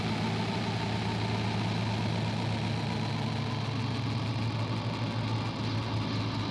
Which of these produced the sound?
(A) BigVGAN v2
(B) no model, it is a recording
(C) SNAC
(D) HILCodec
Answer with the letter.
B